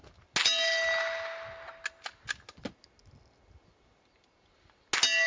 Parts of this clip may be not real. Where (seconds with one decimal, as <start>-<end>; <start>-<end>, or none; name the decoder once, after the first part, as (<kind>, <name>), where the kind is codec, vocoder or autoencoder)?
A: none